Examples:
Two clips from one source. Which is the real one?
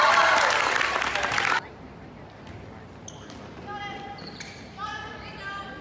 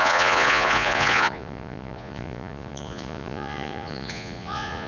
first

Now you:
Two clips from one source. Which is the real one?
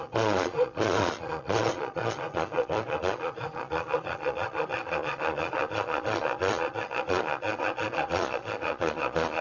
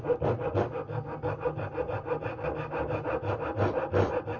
second